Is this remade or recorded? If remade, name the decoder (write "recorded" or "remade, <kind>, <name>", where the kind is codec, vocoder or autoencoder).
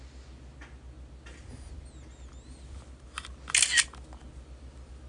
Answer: recorded